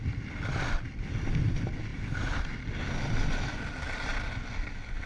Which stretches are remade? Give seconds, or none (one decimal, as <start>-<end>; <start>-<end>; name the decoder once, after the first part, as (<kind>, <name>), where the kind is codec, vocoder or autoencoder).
none